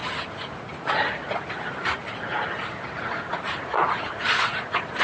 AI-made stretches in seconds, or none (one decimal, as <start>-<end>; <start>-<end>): 3.0-5.0